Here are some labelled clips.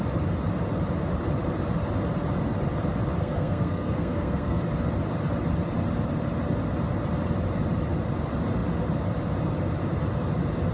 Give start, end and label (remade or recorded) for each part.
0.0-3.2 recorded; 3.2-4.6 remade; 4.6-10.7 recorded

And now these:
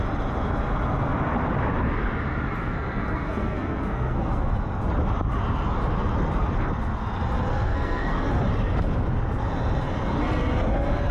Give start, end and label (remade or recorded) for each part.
0.0-2.6 recorded; 2.6-4.5 remade; 4.5-7.5 recorded; 7.5-8.3 remade; 8.3-11.1 recorded